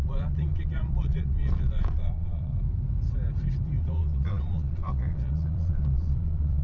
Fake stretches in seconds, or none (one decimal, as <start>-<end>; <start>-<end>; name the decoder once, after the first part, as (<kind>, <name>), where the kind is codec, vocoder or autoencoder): 0.0-2.5 (vocoder, Vocos); 3.8-6.6